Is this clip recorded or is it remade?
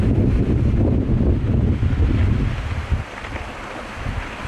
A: recorded